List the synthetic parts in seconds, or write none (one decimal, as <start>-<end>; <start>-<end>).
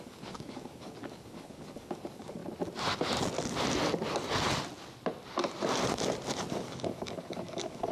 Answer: 0.0-2.4; 6.5-7.9